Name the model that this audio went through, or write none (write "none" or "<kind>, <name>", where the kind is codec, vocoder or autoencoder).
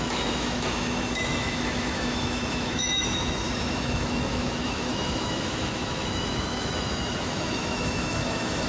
autoencoder, DAC-VAE